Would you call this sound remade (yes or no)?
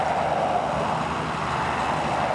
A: no